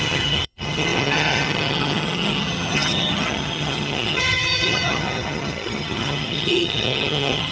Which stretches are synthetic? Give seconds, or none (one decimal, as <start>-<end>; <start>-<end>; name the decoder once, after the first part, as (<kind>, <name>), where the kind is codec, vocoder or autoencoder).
0.0-7.5 (vocoder, HiFi-GAN)